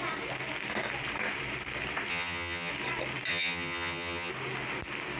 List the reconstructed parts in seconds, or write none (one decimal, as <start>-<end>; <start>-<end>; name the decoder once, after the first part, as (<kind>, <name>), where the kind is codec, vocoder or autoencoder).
2.1-2.7 (vocoder, HiFi-GAN); 3.3-4.3